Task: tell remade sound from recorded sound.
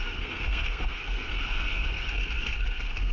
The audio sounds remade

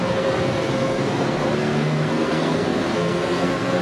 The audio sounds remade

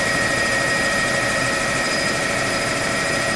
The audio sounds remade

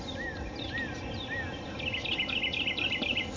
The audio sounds recorded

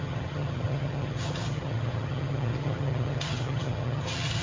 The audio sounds remade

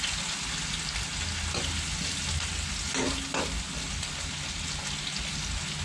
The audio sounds recorded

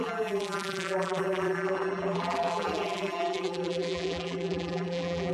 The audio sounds remade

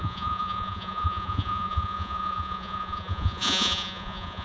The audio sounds remade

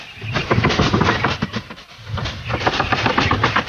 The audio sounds remade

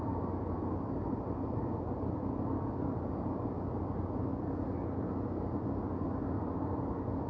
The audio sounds recorded